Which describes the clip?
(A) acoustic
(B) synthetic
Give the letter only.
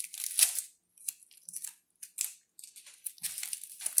A